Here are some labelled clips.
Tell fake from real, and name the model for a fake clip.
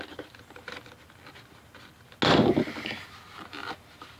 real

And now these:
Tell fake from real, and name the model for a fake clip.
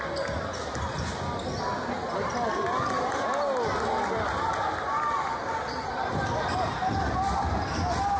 real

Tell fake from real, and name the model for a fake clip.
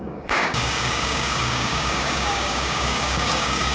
fake, codec, DAC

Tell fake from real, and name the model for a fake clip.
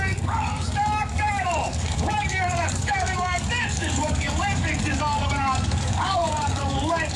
fake, codec, DAC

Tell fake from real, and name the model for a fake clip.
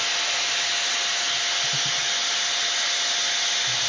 real